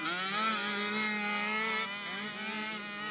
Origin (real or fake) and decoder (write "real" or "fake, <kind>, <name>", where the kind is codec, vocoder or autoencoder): real